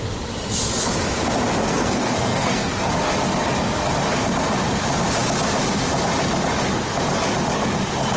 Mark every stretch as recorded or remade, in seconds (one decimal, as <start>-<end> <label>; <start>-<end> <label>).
0.0-1.6 recorded; 1.6-2.9 remade; 2.9-8.2 recorded